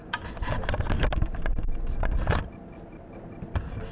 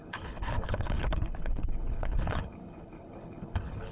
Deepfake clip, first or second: second